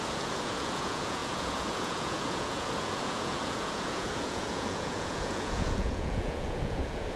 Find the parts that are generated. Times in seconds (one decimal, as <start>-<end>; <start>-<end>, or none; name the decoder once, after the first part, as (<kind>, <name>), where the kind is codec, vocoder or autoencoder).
0.0-7.2 (vocoder, Vocos)